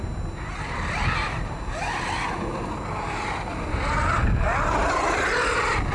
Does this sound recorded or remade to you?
recorded